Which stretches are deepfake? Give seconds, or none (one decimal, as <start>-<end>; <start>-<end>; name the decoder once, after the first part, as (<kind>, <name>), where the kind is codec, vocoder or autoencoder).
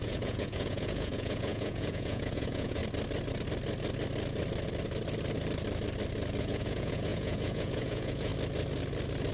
0.0-2.8 (vocoder, Vocos); 6.4-8.3